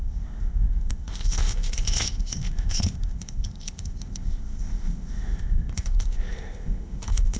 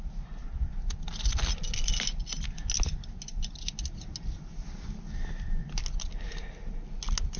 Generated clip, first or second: first